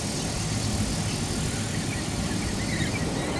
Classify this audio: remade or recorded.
recorded